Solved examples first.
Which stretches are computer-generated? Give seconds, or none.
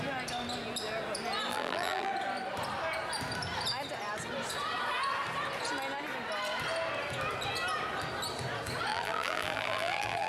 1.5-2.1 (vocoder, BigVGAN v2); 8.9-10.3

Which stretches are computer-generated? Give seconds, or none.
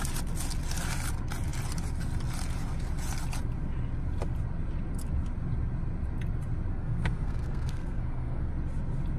6.7-8.5 (codec, SNAC)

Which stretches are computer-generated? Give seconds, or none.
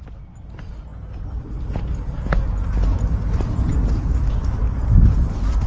none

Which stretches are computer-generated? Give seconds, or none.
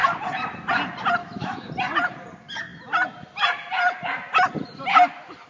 1.2-1.7 (autoencoder, DAC-VAE)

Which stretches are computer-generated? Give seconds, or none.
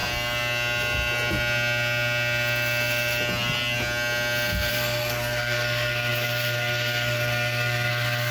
4.7-8.3 (codec, SNAC)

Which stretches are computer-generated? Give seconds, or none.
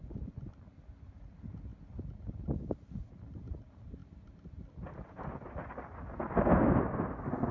none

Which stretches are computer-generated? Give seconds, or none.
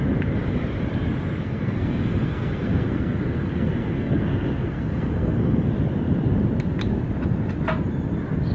1.4-5.7 (codec, SNAC)